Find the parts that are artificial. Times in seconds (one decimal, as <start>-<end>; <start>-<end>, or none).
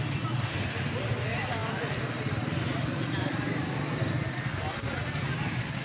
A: none